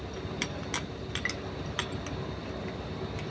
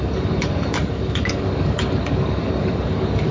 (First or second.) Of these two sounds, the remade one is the second